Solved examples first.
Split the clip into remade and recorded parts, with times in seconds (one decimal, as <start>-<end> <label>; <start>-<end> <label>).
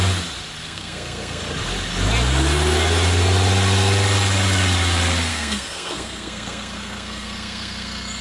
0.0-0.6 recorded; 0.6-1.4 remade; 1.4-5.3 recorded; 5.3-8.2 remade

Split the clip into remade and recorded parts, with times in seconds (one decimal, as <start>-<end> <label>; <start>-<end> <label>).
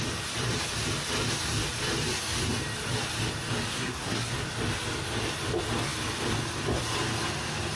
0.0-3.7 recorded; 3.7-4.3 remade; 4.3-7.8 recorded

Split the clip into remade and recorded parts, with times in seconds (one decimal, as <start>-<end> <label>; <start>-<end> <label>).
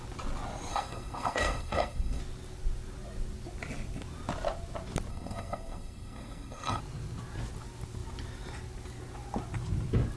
0.0-0.7 recorded; 0.7-2.2 remade; 2.2-5.1 recorded; 5.1-6.8 remade; 6.8-10.2 recorded